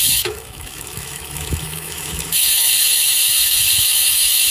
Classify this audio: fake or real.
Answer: fake